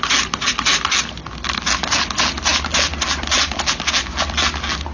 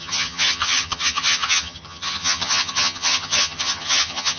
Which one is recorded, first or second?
first